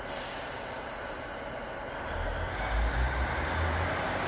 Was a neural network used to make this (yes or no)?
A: no